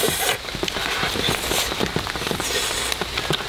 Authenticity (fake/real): real